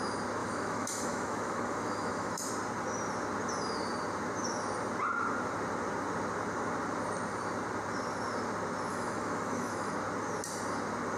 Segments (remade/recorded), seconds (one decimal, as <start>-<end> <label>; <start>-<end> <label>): 0.0-0.4 recorded; 0.4-2.5 remade; 2.5-8.9 recorded; 8.9-9.9 remade; 9.9-11.2 recorded

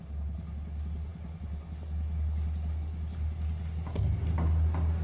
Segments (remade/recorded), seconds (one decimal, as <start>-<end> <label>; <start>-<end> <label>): 0.0-5.0 recorded

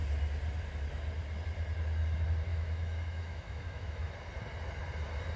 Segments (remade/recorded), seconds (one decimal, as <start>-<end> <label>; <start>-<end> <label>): 0.0-2.5 recorded; 2.5-4.1 remade; 4.1-5.4 recorded

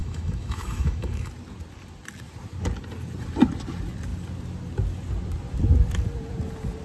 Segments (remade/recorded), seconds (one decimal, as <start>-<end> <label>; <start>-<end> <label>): 0.0-1.3 remade; 1.3-6.8 recorded

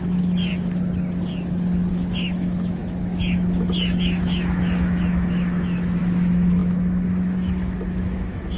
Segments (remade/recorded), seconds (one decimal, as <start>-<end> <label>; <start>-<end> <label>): 0.0-0.5 remade; 0.5-1.9 recorded; 1.9-8.6 remade

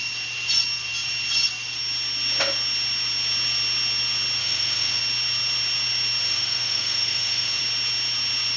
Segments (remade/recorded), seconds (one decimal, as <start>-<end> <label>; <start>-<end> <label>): 0.0-4.4 recorded; 4.4-5.0 remade; 5.0-6.2 recorded; 6.2-7.6 remade; 7.6-8.6 recorded

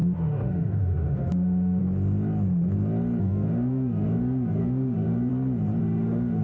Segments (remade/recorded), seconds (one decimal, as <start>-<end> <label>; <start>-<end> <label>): 0.0-1.8 remade; 1.8-3.2 recorded; 3.2-5.3 remade; 5.3-5.8 recorded; 5.8-6.4 remade

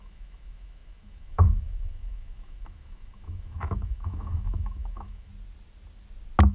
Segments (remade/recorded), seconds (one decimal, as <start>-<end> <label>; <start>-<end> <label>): 0.0-5.3 remade; 5.3-6.5 recorded